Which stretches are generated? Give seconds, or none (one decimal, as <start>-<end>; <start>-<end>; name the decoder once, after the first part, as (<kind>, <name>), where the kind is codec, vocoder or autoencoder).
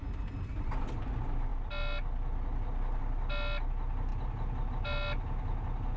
none